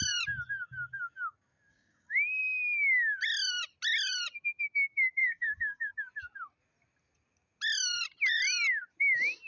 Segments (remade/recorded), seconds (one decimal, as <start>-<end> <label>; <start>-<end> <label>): 0.0-1.7 recorded; 1.7-2.4 remade; 2.4-5.2 recorded; 5.2-5.9 remade; 5.9-9.5 recorded